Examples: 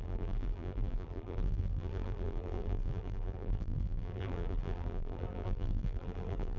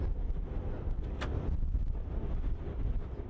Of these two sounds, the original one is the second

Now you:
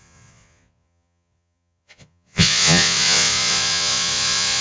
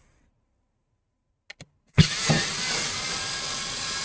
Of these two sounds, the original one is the second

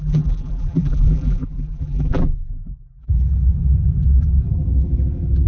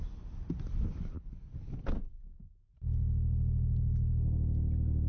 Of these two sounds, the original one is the second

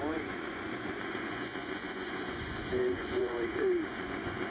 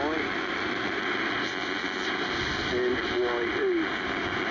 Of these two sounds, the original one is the second